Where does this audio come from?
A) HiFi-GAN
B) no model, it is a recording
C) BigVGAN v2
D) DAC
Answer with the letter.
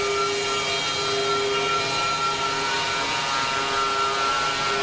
B